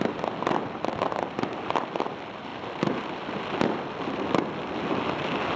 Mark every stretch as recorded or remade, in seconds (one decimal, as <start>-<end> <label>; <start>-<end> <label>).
0.0-5.6 recorded